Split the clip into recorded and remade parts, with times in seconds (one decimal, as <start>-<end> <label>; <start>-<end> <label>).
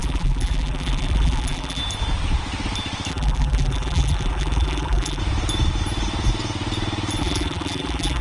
0.0-1.8 remade; 1.8-3.1 recorded; 3.1-5.2 remade; 5.2-7.2 recorded; 7.2-8.2 remade